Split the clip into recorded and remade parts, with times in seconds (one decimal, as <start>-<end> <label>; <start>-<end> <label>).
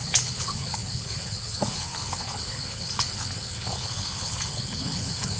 0.0-5.4 remade